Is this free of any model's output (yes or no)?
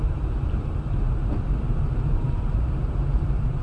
no